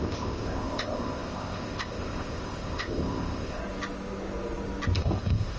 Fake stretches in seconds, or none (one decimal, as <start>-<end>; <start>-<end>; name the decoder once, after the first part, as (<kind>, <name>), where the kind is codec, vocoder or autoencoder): 0.0-3.6 (codec, ZipCodec); 5.0-5.6